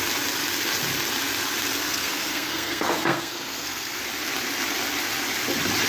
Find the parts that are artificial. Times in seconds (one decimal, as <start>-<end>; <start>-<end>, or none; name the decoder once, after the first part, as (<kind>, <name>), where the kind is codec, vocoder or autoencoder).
1.8-4.0 (codec, SNAC)